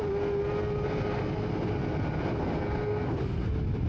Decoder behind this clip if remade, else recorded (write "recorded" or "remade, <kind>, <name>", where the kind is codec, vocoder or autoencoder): recorded